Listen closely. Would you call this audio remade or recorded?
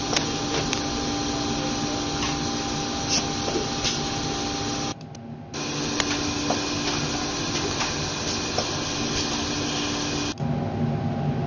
recorded